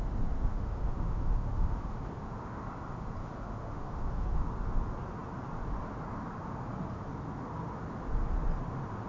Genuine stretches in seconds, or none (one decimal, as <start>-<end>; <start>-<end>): 0.0-0.5; 2.6-3.2; 4.5-9.1